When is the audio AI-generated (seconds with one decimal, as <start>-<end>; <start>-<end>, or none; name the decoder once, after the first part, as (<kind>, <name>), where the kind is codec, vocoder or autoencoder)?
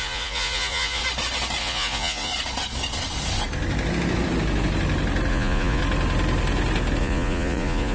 0.0-1.0 (vocoder, Vocos); 1.6-2.3; 5.3-5.8; 7.0-7.9